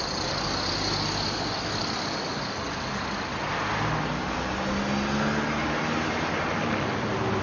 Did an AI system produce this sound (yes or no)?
no